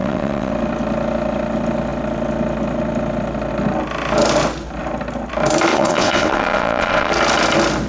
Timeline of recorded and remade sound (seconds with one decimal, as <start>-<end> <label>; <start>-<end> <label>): 0.0-0.5 remade; 0.5-5.7 recorded; 5.7-7.1 remade; 7.1-7.9 recorded

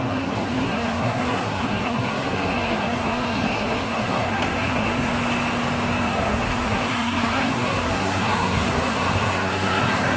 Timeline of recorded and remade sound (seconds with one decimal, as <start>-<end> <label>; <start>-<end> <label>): 0.0-5.1 remade; 5.1-6.0 recorded; 6.0-10.2 remade

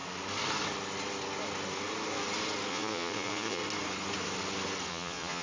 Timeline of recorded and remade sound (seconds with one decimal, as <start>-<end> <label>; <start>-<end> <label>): 0.0-2.7 recorded; 2.7-3.6 remade; 3.6-4.9 recorded; 4.9-5.4 remade

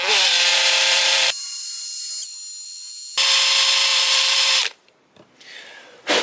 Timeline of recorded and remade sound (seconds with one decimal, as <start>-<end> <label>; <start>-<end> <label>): 0.0-0.5 recorded; 0.5-2.1 remade; 2.1-3.9 recorded; 3.9-4.9 remade; 4.9-6.2 recorded

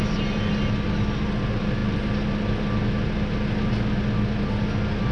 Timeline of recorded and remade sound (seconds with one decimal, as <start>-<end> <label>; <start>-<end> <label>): 0.0-5.1 recorded

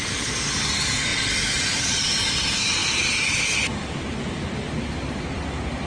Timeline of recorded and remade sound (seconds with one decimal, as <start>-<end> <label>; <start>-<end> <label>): 0.0-5.9 recorded

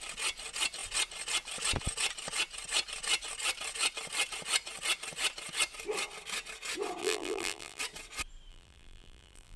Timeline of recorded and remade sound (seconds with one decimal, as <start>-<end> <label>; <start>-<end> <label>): 0.0-7.0 recorded; 7.0-7.8 remade; 7.8-8.5 recorded; 8.5-9.6 remade

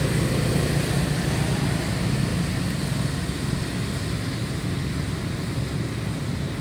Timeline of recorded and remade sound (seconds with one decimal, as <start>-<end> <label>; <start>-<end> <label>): 0.0-2.3 recorded; 2.3-4.6 remade; 4.6-6.6 recorded